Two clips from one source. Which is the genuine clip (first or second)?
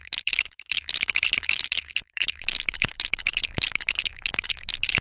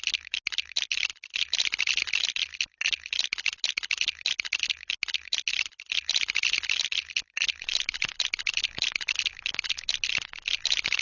second